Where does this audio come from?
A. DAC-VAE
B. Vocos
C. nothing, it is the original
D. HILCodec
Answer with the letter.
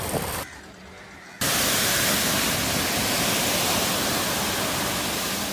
C